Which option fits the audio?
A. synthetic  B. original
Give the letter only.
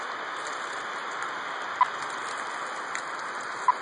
B